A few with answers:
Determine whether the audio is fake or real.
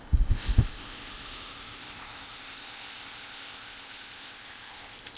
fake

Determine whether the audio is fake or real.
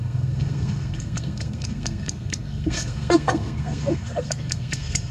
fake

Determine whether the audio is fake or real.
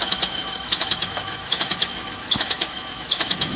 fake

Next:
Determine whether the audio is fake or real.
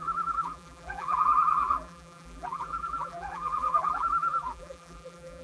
fake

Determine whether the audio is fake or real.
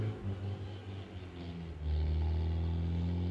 real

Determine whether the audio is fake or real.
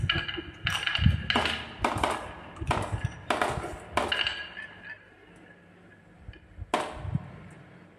real